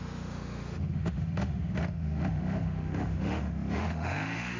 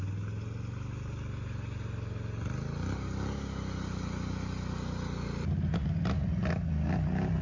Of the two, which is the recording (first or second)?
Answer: second